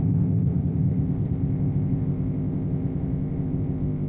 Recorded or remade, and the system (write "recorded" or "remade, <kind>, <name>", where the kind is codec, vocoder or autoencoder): remade, codec, ZipCodec